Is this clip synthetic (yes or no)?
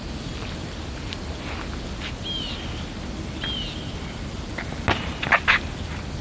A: no